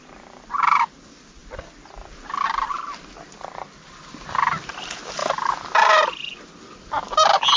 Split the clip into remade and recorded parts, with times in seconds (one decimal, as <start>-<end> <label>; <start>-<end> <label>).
0.0-7.6 recorded